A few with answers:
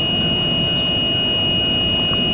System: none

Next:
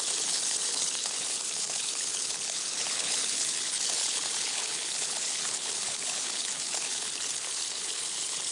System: codec, HILCodec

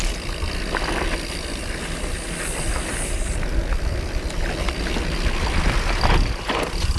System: none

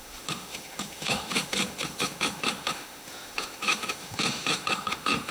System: autoencoder, DAC-VAE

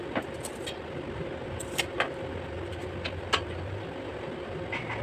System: none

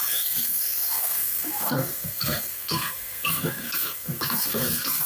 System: codec, SNAC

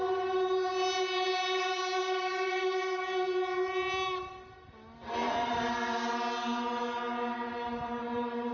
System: none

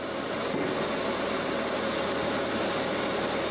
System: none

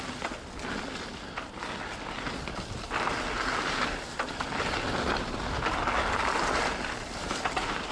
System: none